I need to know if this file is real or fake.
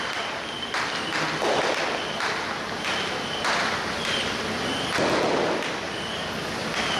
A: real